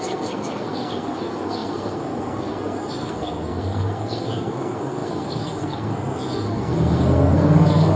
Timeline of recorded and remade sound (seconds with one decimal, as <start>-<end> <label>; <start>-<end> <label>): 0.0-8.0 remade